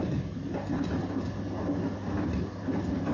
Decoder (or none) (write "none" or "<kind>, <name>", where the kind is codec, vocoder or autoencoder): none